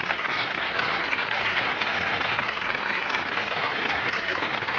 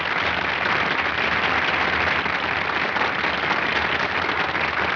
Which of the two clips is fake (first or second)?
first